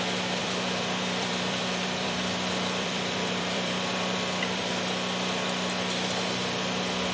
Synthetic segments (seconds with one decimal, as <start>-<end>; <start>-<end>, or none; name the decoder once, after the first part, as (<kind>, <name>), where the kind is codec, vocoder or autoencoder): 0.4-4.7 (vocoder, BigVGAN v2)